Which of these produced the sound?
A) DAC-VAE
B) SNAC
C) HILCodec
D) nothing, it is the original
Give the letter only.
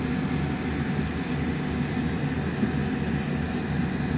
D